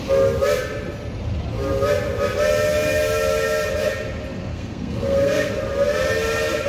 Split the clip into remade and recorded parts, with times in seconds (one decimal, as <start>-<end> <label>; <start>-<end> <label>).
0.0-4.5 recorded; 4.5-5.5 remade; 5.5-6.7 recorded